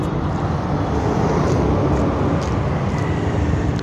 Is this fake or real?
real